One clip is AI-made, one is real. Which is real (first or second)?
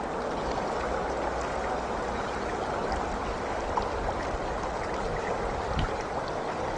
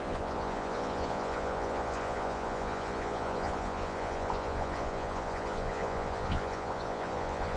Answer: first